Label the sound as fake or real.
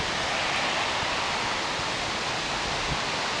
real